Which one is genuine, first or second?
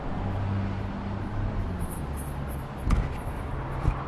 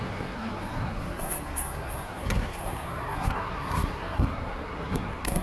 first